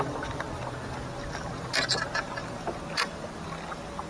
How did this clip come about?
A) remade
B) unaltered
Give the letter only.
B